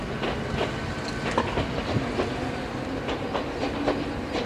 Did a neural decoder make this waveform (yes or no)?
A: no